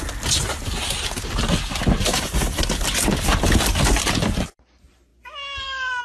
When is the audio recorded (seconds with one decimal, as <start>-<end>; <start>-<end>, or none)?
0.0-2.1; 4.1-6.0